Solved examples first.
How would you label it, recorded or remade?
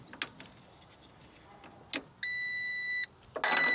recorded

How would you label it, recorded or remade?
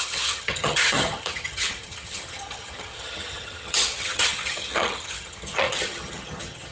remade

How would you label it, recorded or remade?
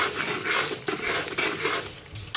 recorded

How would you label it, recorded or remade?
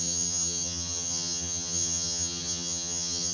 remade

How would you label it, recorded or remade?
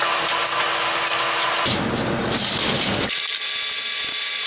recorded